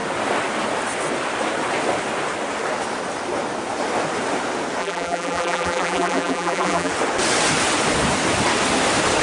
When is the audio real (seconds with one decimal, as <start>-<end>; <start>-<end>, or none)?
0.0-4.8; 6.9-9.2